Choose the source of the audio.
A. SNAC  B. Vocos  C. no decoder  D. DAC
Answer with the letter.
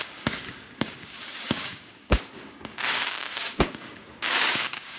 D